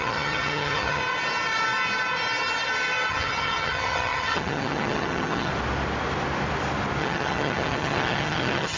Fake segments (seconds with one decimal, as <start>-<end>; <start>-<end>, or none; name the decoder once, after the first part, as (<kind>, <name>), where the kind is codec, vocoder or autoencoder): 0.0-1.0 (vocoder, HiFi-GAN); 3.1-5.5; 7.0-8.8